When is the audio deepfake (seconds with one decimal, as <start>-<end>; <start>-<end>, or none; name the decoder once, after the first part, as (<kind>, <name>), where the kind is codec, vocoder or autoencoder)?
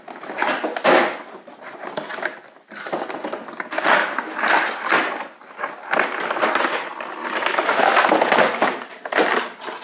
none